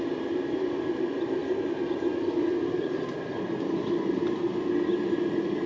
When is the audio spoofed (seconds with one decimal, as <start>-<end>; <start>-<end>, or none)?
none

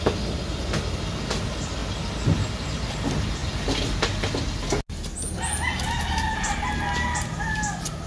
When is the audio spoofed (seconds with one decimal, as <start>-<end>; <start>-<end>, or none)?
none

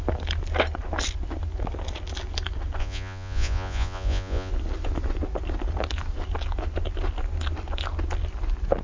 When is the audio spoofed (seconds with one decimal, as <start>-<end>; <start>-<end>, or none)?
2.8-4.5

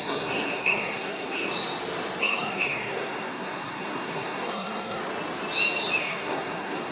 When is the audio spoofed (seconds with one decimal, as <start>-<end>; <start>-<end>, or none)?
0.0-1.5; 2.2-5.0; 6.0-6.9

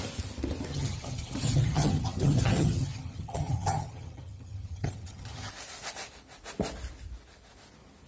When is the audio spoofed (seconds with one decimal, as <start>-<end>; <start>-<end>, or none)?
0.7-5.5